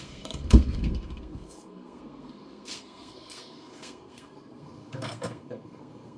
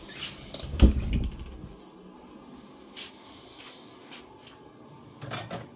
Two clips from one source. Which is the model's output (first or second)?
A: first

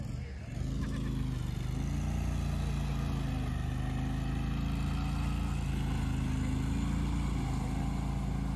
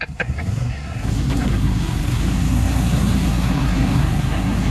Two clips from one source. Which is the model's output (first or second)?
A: second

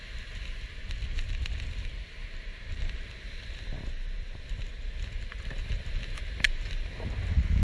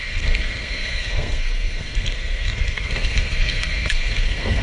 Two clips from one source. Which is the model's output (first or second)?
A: second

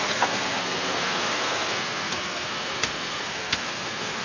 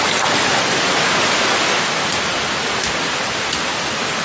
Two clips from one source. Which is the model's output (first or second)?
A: first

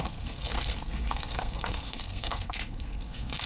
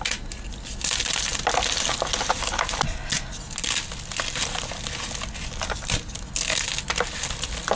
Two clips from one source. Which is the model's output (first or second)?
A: first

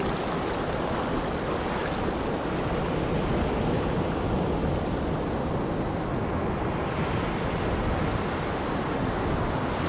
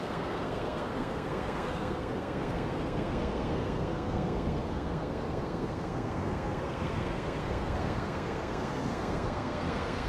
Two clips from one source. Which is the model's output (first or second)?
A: second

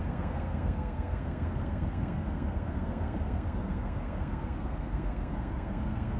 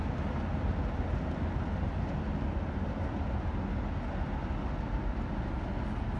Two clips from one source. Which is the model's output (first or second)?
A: first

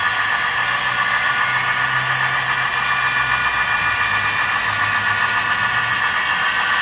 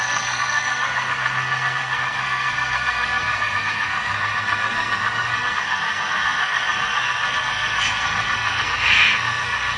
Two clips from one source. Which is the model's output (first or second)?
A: second